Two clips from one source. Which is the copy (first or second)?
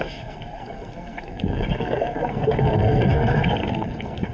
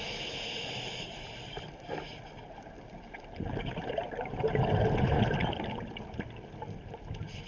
first